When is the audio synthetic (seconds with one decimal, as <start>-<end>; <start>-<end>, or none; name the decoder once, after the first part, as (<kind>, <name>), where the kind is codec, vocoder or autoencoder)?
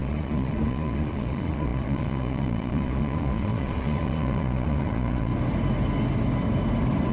0.0-5.3 (vocoder, Vocos)